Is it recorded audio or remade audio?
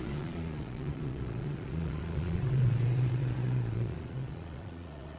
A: remade